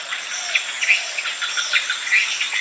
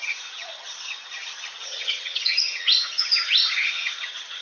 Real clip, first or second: first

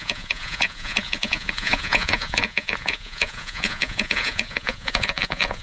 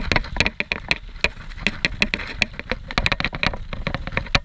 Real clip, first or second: second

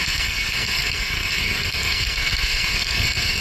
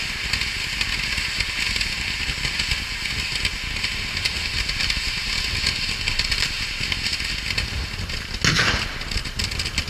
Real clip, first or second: second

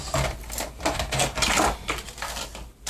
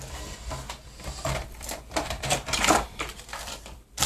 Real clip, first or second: first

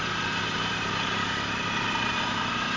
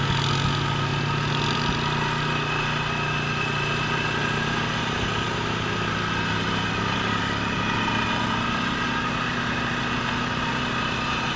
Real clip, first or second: second